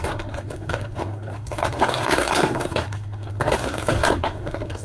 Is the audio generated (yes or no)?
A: yes